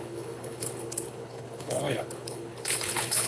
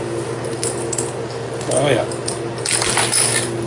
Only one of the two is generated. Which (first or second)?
first